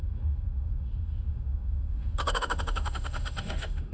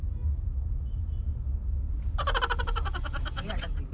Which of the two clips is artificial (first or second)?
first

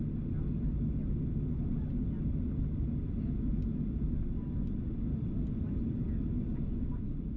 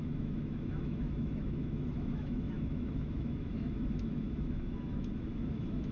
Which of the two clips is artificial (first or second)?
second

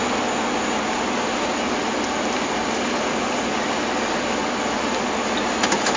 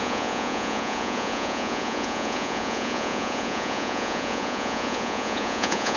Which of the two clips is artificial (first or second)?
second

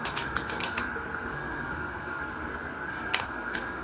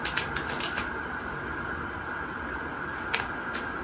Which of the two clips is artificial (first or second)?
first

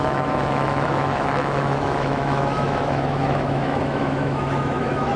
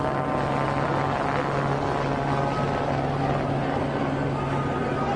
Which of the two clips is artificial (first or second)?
first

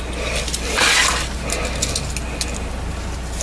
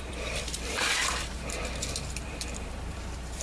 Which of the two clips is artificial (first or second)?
second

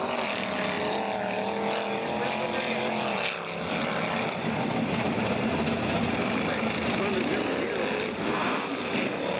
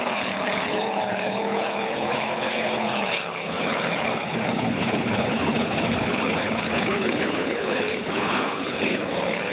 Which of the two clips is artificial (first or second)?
second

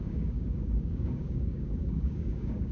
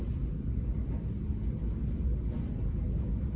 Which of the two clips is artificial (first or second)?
first